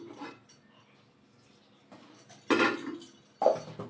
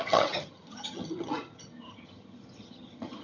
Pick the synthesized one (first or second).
second